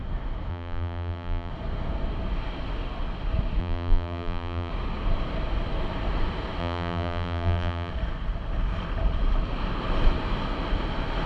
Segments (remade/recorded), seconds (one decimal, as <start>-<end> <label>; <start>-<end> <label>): 0.0-0.5 recorded; 0.5-1.5 remade; 1.5-3.6 recorded; 3.6-4.7 remade; 4.7-6.6 recorded; 6.6-7.9 remade; 7.9-11.3 recorded